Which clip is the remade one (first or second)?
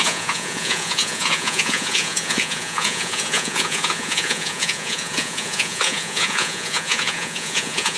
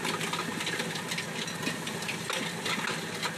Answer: first